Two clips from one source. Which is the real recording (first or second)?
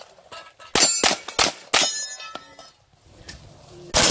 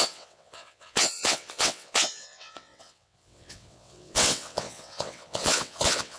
first